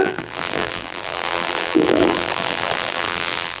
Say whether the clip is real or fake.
fake